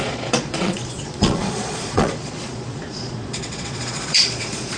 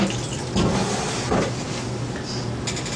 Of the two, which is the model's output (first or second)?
first